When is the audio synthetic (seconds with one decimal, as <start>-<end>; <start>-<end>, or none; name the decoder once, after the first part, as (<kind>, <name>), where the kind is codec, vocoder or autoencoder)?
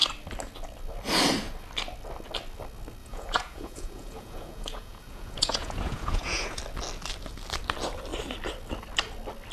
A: 3.0-6.6 (vocoder, Vocos)